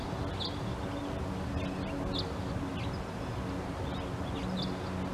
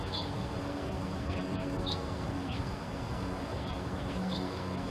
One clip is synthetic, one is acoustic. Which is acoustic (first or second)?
first